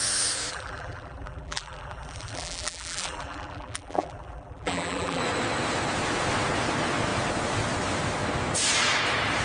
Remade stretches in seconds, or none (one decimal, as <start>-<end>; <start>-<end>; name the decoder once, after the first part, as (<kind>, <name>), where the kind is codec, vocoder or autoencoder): 0.5-5.2 (vocoder, BigVGAN v2)